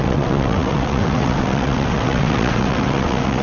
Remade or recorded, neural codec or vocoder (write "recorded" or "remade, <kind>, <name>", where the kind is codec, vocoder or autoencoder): remade, vocoder, WaveNeXt